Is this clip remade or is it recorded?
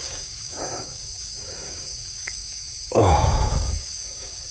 remade